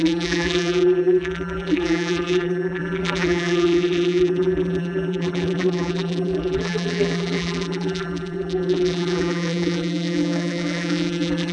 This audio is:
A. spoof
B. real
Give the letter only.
A